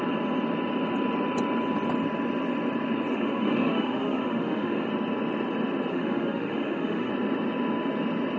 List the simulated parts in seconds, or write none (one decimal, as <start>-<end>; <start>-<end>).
3.1-4.9; 5.9-7.1